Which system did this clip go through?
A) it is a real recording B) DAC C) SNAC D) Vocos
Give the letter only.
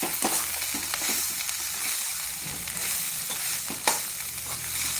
A